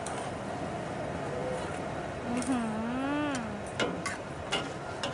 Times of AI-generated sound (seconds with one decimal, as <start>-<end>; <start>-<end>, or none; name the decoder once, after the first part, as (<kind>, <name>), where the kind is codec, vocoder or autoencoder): none